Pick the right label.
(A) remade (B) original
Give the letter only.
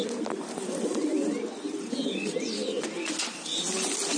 B